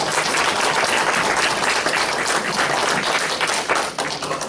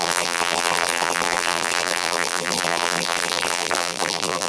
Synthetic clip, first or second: second